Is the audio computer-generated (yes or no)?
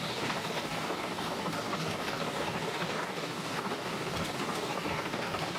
yes